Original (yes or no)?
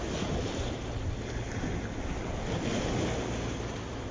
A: yes